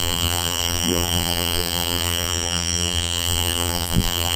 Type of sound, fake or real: fake